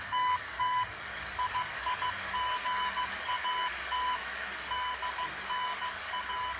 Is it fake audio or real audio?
fake